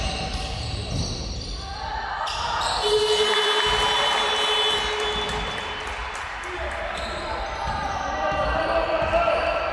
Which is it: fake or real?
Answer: fake